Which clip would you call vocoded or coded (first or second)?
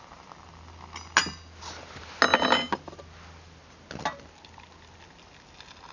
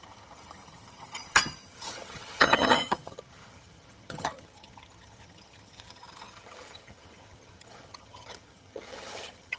second